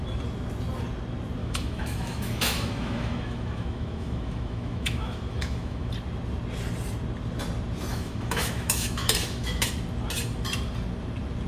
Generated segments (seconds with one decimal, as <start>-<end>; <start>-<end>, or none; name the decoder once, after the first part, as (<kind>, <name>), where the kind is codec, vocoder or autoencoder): 1.4-5.9 (autoencoder, DAC-VAE); 7.9-9.7